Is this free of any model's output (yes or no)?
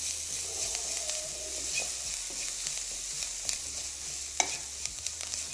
yes